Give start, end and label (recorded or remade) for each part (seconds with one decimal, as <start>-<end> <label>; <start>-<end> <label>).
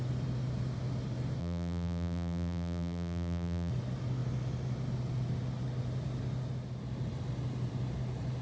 0.0-1.4 recorded; 1.4-3.7 remade; 3.7-8.4 recorded